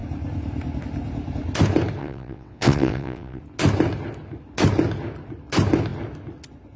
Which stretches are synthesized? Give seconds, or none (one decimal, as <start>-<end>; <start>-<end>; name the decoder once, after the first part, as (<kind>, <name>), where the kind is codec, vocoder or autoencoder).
2.0-3.4 (vocoder, WaveNeXt)